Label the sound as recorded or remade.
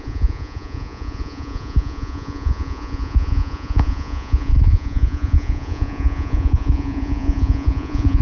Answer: remade